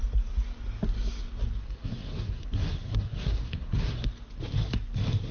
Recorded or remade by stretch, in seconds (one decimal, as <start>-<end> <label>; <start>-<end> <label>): 0.0-1.6 recorded; 1.6-4.1 remade; 4.1-5.3 recorded

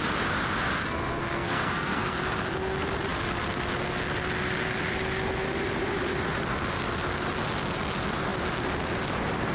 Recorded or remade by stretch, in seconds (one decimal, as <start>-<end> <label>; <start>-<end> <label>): 0.0-1.2 recorded; 1.2-2.2 remade; 2.2-9.5 recorded

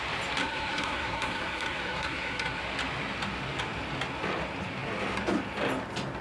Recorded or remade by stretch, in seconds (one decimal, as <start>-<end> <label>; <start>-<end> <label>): 0.0-0.4 recorded; 0.4-2.6 remade; 2.6-6.2 recorded

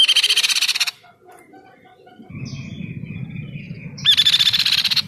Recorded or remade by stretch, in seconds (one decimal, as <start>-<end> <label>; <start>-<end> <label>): 0.0-5.1 recorded

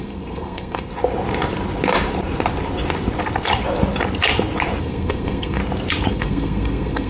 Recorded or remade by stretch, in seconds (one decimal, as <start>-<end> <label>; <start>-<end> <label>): 0.0-0.9 remade; 0.9-4.8 recorded; 4.8-5.6 remade; 5.6-6.1 recorded; 6.1-7.1 remade

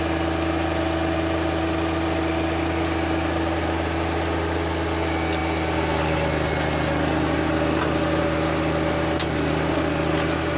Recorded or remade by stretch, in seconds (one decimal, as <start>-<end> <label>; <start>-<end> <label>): 0.0-10.6 recorded

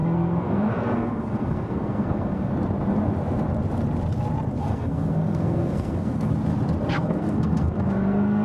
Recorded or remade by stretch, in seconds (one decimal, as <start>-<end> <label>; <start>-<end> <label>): 0.0-2.5 remade; 2.5-4.6 recorded; 4.6-6.3 remade; 6.3-6.9 recorded; 6.9-8.4 remade

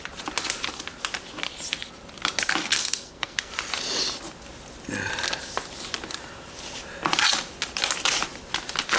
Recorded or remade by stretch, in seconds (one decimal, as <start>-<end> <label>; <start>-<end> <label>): 0.0-2.6 recorded; 2.6-3.5 remade; 3.5-9.0 recorded